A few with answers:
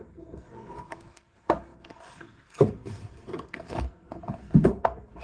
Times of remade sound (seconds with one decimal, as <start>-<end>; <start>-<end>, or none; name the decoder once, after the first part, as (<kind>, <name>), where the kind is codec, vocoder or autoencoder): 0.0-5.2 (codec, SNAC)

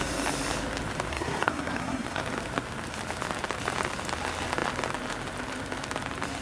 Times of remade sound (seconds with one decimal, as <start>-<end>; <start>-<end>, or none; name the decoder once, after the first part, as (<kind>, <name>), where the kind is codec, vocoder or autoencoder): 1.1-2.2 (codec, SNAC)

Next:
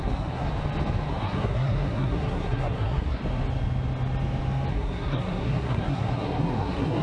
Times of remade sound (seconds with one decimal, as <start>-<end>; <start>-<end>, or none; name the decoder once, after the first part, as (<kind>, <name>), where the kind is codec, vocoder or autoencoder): 0.0-0.5 (codec, SNAC); 1.1-3.2; 4.7-7.0